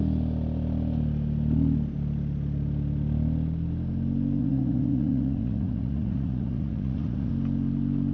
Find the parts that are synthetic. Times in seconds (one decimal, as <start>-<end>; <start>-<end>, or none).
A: 4.4-7.3